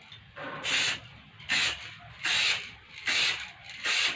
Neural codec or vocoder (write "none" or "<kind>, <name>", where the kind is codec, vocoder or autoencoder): none